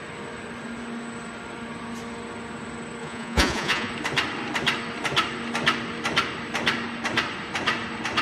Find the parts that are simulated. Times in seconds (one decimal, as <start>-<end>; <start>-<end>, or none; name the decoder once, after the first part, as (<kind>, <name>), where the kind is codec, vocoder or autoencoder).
3.0-3.9 (vocoder, Vocos)